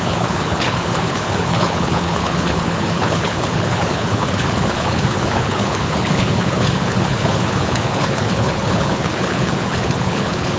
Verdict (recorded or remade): remade